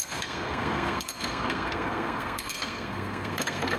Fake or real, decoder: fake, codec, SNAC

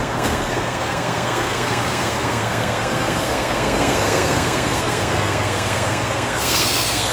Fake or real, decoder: fake, codec, SNAC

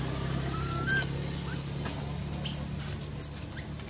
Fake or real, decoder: real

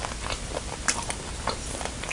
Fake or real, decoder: real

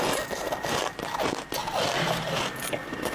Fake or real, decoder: real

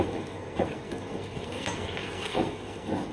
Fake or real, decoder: fake, codec, SNAC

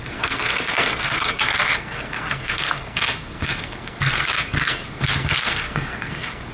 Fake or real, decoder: fake, codec, SNAC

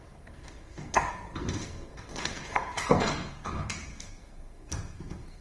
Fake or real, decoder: fake, codec, SNAC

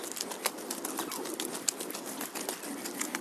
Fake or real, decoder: real